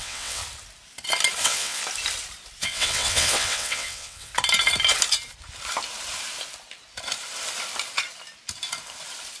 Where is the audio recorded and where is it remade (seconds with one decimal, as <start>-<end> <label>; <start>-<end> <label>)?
0.0-0.4 remade; 0.4-1.4 recorded; 1.4-1.8 remade; 1.8-2.6 recorded; 2.6-4.3 remade; 4.3-9.4 recorded